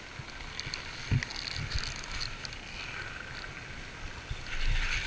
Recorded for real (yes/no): yes